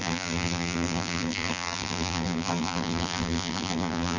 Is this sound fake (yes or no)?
yes